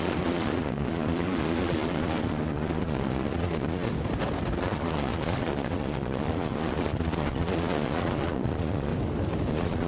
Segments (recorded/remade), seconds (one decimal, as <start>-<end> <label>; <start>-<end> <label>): 0.0-3.9 remade; 3.9-4.6 recorded; 4.6-8.9 remade; 8.9-9.5 recorded; 9.5-9.9 remade